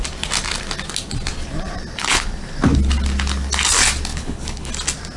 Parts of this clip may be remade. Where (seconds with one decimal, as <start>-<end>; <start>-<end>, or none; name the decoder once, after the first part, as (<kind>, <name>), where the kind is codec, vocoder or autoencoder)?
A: 2.0-2.7 (codec, HILCodec); 4.1-4.7